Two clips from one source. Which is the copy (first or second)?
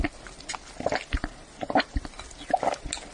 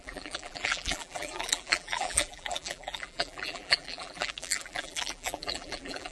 second